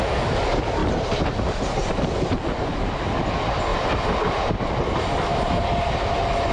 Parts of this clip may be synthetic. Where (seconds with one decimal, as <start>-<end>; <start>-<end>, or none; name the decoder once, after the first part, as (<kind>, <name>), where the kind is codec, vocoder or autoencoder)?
0.8-3.2 (vocoder, BigVGAN v2); 5.3-5.9